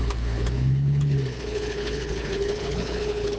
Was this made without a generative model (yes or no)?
no